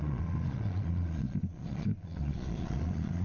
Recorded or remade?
remade